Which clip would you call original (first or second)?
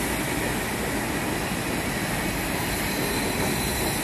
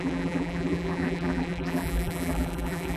first